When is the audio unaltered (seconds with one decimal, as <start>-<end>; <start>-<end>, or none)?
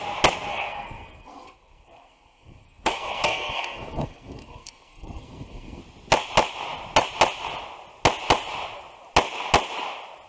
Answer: 0.0-0.5; 5.8-10.3